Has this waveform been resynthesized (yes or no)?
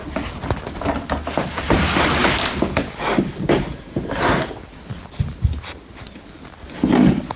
no